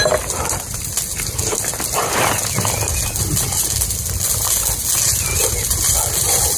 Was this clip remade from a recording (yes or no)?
no